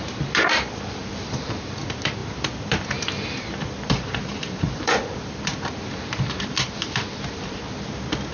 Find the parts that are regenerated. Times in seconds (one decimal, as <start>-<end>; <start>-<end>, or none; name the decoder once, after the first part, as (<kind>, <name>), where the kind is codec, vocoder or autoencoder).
0.0-8.3 (vocoder, BigVGAN v2)